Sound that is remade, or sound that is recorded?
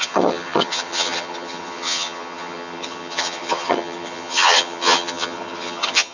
remade